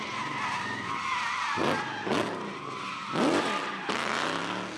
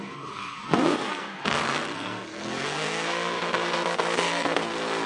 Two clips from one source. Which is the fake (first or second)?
second